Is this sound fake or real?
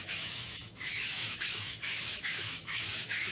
fake